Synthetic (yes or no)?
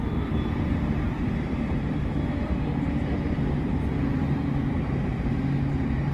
yes